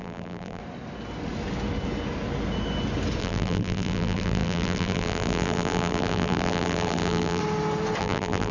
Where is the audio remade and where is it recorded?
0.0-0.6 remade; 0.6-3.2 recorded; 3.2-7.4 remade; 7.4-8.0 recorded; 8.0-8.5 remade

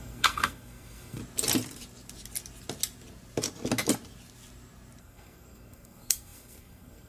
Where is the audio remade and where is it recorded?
0.0-1.2 remade; 1.2-5.0 recorded; 5.0-7.1 remade

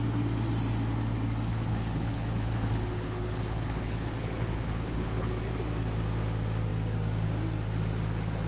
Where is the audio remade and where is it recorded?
0.0-1.5 recorded; 1.5-5.3 remade; 5.3-8.5 recorded

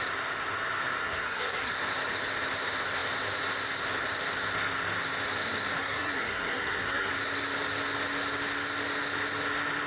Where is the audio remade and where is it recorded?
0.0-1.0 recorded; 1.0-1.7 remade; 1.7-5.8 recorded; 5.8-7.1 remade; 7.1-9.9 recorded

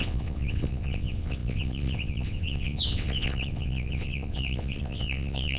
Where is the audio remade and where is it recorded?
0.0-5.6 remade

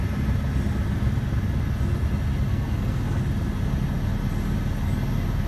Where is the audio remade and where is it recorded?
0.0-2.5 recorded; 2.5-3.2 remade; 3.2-5.5 recorded